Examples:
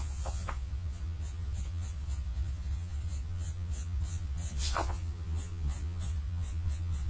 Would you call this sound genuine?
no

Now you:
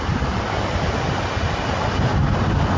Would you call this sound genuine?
yes